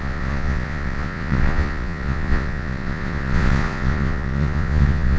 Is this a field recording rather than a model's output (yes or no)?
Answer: no